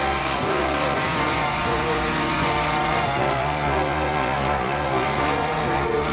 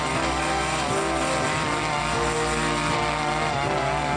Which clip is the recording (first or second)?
second